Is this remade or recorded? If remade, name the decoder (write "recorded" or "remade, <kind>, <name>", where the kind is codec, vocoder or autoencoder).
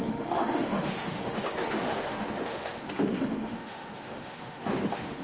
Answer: remade, autoencoder, DAC-VAE